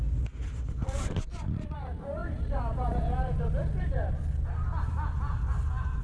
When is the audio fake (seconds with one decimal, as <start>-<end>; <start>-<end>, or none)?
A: none